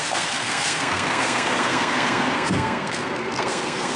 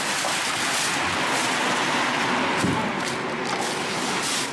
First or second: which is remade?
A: first